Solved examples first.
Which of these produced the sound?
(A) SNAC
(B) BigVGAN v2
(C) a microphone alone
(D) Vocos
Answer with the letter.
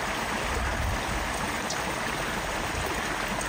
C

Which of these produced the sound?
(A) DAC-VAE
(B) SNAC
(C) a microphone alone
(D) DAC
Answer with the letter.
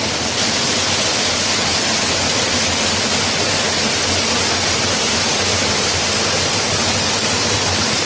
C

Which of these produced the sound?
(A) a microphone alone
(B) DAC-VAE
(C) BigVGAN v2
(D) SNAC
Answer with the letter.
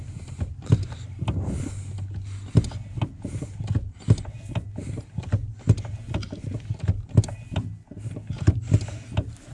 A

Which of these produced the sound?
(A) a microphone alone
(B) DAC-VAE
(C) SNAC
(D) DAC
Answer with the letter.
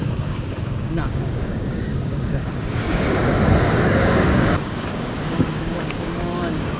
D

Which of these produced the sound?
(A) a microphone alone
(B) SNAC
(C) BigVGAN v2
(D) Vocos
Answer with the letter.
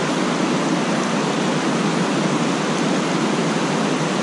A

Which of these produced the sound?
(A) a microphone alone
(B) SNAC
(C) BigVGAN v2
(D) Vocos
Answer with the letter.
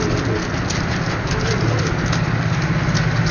A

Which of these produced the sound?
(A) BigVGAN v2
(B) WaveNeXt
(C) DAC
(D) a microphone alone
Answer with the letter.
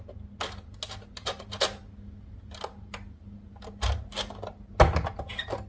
D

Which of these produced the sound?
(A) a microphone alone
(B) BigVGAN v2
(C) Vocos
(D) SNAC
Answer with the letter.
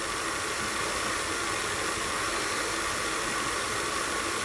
A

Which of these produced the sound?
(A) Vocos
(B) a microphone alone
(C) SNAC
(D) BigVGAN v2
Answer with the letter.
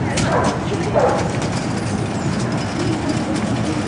B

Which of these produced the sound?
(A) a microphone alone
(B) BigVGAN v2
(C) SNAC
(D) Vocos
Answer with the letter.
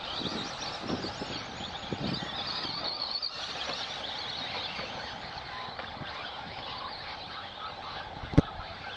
A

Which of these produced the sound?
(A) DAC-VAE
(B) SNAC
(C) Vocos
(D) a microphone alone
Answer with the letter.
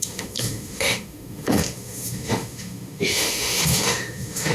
A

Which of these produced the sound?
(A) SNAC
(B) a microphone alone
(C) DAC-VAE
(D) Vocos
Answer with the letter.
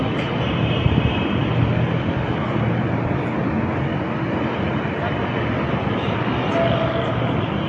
B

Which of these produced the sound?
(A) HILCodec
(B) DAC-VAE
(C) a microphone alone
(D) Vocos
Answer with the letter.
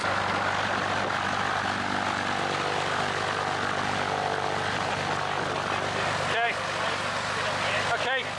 C